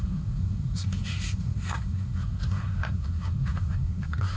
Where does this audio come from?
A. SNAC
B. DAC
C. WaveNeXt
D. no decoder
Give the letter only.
A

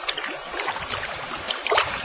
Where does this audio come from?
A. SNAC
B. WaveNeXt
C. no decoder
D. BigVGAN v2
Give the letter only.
D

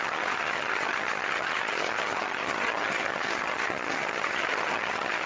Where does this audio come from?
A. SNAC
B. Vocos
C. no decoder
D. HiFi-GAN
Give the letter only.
D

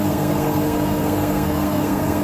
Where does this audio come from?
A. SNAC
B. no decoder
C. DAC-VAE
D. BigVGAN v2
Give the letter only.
A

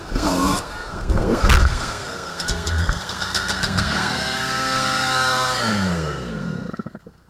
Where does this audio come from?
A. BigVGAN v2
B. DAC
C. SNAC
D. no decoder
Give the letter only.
C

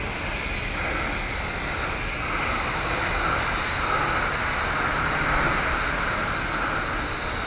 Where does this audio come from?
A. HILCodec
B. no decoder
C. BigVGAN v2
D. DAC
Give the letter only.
B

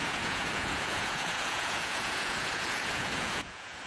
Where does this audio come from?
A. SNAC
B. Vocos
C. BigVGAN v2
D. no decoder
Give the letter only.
B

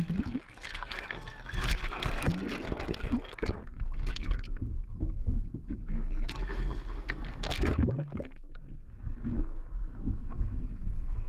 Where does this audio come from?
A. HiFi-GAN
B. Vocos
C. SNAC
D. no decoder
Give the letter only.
C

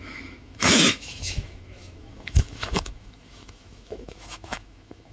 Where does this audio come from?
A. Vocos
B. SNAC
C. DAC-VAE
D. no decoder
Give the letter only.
C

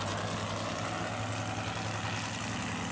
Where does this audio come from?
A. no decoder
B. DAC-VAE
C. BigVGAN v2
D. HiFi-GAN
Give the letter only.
A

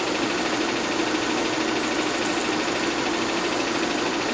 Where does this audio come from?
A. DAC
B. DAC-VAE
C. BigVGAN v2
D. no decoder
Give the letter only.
D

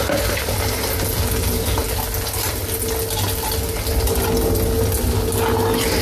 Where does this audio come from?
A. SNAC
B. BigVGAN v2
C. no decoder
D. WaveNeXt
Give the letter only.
C